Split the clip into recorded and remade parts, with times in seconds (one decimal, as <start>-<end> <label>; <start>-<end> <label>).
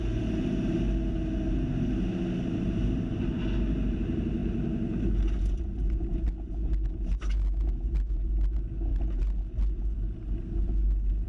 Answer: 0.0-11.3 recorded